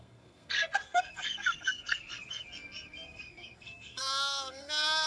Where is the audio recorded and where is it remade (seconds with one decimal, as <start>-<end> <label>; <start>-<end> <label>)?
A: 0.0-5.1 remade